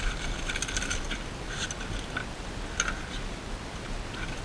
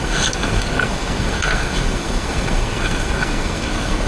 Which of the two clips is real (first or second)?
first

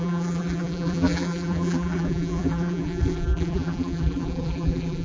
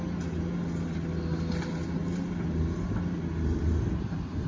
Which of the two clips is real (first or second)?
second